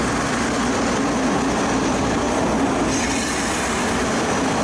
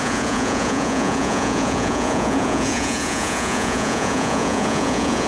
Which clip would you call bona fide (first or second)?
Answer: first